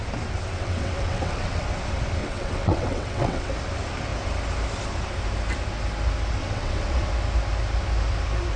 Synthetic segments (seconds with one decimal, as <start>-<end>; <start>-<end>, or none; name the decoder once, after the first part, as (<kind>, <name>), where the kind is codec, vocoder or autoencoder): 0.6-1.6 (vocoder, WaveNeXt); 2.2-3.5; 6.4-7.1